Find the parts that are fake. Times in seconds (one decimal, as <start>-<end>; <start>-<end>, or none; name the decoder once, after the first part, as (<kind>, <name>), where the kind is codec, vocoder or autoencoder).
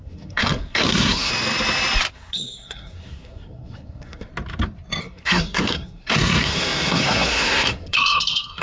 0.0-1.3 (codec, SNAC); 2.1-4.3; 5.0-8.6